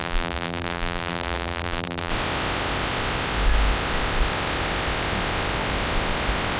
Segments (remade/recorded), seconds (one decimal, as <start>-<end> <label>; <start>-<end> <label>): 0.0-2.1 remade; 2.1-6.6 recorded